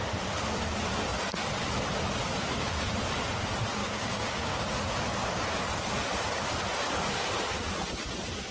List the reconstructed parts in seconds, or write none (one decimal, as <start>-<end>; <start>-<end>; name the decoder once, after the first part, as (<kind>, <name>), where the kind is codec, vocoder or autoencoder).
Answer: 3.8-4.7 (codec, DAC)